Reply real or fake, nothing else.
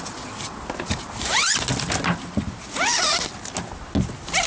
real